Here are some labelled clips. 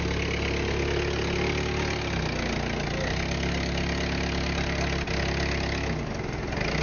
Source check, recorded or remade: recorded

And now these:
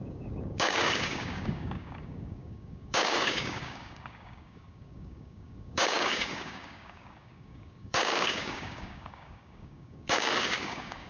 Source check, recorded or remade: remade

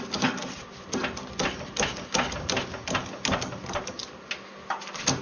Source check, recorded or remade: recorded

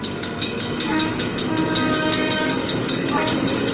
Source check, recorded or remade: remade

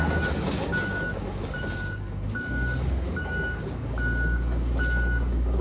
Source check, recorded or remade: remade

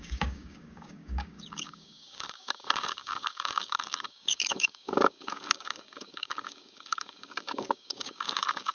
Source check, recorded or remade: remade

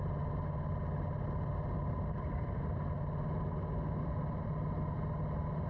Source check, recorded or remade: recorded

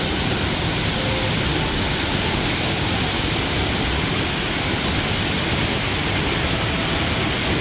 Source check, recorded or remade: recorded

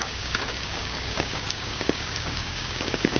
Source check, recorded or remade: remade